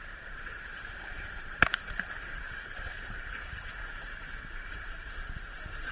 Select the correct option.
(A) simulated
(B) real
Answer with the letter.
A